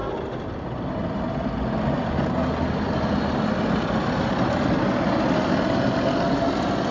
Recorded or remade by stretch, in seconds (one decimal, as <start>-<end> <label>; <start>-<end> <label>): 0.0-6.9 recorded